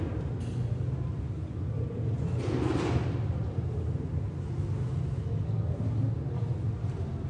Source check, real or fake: real